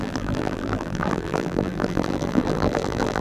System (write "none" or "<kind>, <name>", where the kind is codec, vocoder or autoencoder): vocoder, BigVGAN v2